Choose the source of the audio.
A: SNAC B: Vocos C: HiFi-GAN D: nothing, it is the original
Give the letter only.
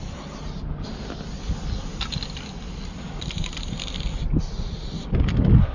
D